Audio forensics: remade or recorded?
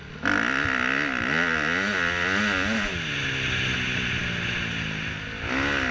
recorded